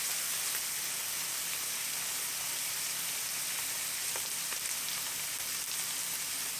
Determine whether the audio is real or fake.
real